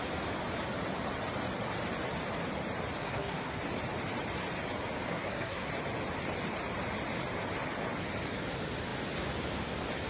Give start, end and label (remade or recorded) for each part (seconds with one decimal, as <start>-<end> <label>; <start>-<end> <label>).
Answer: 0.0-3.0 recorded; 3.0-3.7 remade; 3.7-5.1 recorded; 5.1-5.7 remade; 5.7-10.1 recorded